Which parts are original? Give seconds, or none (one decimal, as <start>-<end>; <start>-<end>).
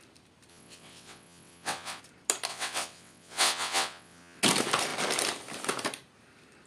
0.0-0.5; 2.0-2.5; 4.4-6.7